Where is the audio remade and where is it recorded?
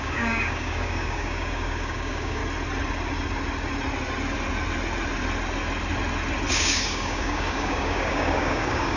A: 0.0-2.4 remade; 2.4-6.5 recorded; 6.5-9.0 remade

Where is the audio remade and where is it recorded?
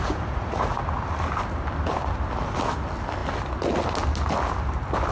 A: 0.0-0.8 remade; 0.8-5.1 recorded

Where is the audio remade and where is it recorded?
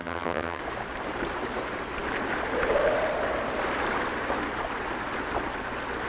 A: 0.0-0.6 remade; 0.6-6.1 recorded